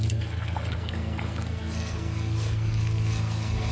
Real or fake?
fake